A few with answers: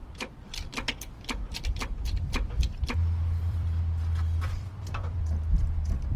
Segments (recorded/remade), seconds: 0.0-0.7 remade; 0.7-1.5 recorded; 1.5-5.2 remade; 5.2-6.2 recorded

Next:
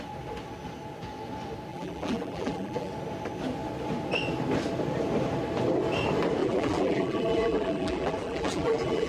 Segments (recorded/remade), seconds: 0.0-1.7 recorded; 1.7-2.9 remade; 2.9-6.4 recorded; 6.4-9.1 remade

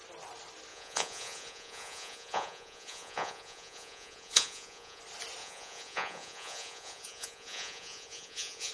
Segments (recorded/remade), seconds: 0.0-0.7 recorded; 0.7-5.0 remade; 5.0-5.4 recorded; 5.4-8.7 remade

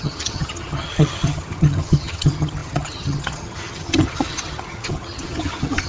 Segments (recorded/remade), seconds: 0.0-5.9 remade

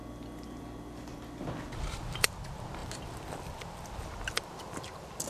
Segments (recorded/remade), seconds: 0.0-5.3 recorded

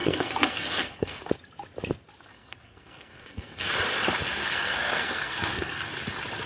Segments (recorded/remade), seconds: 0.0-1.3 remade; 1.3-2.3 recorded; 2.3-3.7 remade; 3.7-4.4 recorded; 4.4-5.9 remade; 5.9-6.5 recorded

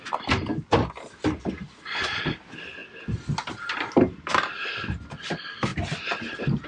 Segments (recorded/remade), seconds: 0.0-6.7 recorded

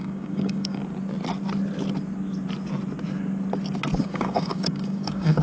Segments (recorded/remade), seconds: 0.0-0.8 remade; 0.8-4.0 recorded; 4.0-5.4 remade